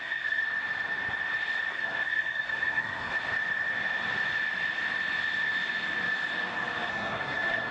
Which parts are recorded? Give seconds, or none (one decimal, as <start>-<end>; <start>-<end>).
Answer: 0.4-1.7; 3.1-6.9